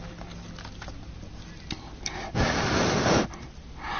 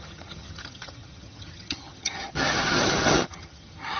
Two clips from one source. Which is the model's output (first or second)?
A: second